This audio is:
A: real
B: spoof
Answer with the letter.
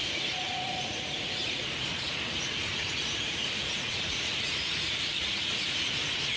B